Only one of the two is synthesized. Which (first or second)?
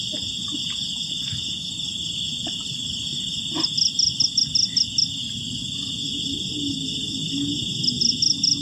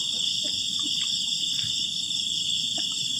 second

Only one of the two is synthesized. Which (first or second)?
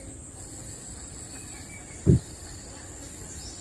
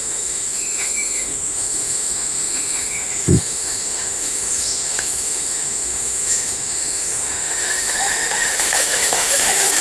second